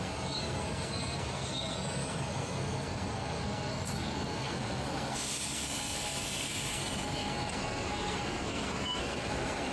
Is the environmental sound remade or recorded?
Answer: remade